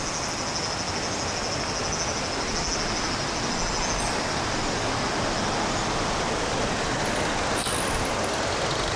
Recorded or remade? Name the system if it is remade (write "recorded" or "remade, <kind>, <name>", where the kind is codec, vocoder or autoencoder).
recorded